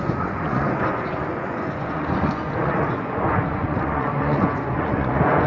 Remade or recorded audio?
remade